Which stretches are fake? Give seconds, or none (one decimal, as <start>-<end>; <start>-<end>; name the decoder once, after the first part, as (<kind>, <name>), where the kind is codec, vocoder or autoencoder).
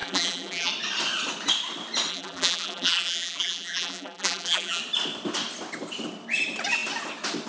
0.0-0.7 (vocoder, BigVGAN v2); 2.1-4.8